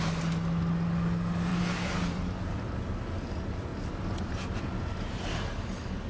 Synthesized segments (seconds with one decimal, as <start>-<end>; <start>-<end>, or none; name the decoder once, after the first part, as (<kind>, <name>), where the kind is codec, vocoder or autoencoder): 1.5-2.7 (vocoder, BigVGAN v2)